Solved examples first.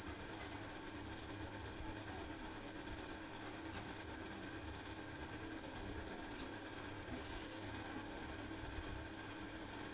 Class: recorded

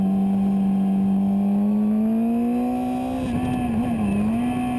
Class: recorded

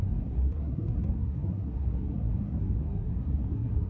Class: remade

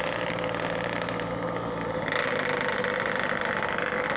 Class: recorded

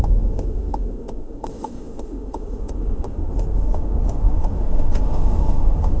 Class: remade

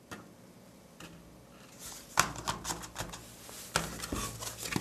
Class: recorded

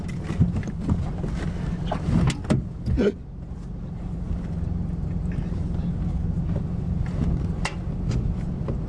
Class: recorded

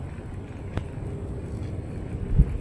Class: recorded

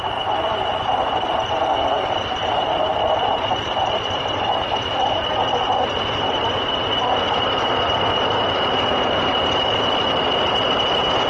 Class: recorded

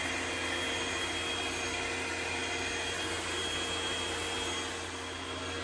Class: recorded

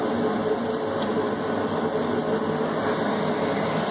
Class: recorded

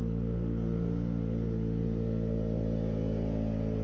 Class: remade